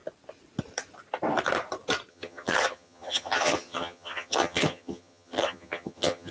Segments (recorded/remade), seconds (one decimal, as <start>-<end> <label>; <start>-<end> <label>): 0.0-2.1 recorded; 2.1-6.3 remade